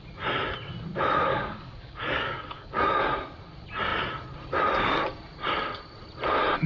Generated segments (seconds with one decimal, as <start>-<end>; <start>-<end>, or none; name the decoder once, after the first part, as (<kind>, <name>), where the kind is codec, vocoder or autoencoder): 1.3-3.0 (codec, DAC)